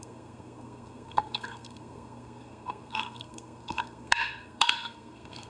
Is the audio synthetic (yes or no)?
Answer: yes